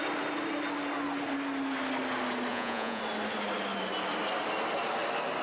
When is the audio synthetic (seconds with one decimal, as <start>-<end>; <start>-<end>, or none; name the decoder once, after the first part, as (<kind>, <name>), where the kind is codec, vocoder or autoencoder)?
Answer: 2.5-3.0 (vocoder, Vocos)